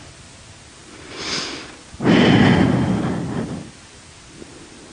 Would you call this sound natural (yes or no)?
yes